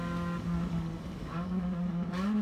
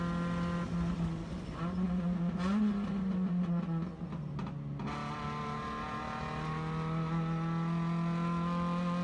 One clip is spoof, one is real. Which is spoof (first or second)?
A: first